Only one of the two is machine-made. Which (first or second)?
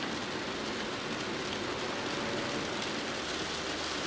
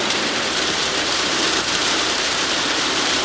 second